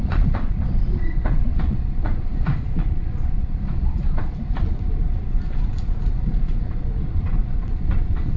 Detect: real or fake fake